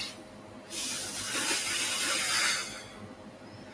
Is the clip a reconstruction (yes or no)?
no